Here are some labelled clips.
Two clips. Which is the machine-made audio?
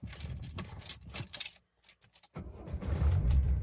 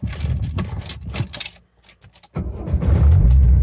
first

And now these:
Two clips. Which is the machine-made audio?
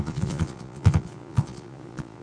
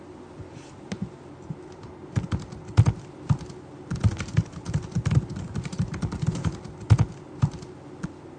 first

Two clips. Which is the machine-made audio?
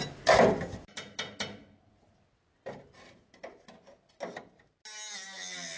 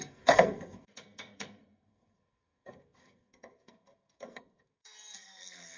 second